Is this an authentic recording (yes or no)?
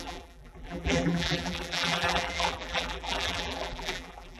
no